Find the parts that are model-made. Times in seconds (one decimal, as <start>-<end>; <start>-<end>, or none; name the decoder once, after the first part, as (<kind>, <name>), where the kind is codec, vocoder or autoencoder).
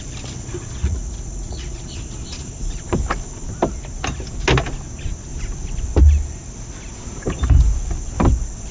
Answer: 0.8-1.9 (vocoder, Vocos)